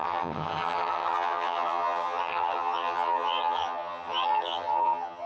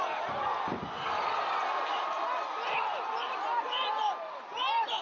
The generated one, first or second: first